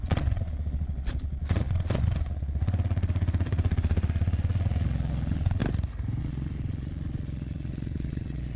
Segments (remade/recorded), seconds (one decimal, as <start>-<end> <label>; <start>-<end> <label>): 0.0-5.6 remade; 5.6-6.2 recorded; 6.2-8.6 remade